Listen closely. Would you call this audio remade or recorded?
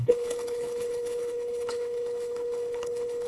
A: remade